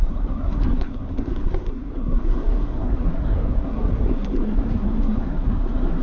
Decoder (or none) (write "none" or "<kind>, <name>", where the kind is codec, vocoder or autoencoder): codec, SNAC